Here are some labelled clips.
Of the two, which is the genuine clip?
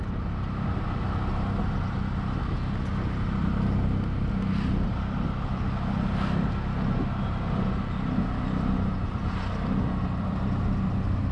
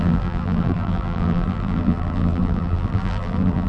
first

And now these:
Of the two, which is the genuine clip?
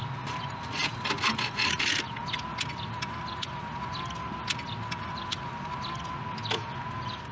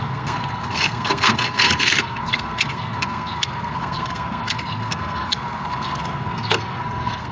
first